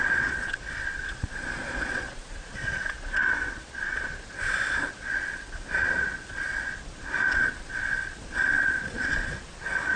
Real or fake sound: fake